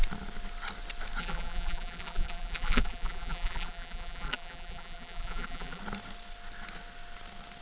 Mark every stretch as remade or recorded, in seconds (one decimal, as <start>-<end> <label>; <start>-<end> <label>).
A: 0.0-1.2 recorded; 1.2-5.8 remade; 5.8-7.6 recorded